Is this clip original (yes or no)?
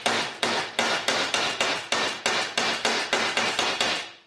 yes